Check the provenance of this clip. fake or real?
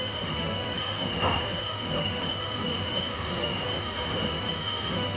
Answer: fake